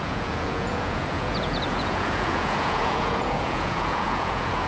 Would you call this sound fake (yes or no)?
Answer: yes